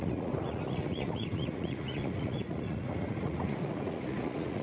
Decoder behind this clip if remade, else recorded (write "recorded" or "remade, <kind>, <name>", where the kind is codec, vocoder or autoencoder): remade, vocoder, Vocos